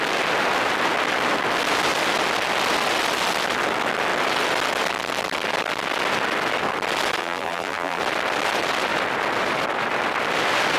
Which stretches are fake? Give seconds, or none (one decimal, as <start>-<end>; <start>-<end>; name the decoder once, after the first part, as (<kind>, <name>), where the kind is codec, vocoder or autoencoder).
7.2-8.0 (vocoder, BigVGAN v2)